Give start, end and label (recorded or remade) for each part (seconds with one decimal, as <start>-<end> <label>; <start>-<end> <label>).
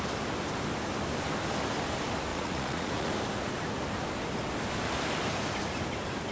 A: 0.0-2.3 recorded; 2.3-3.1 remade; 3.1-6.3 recorded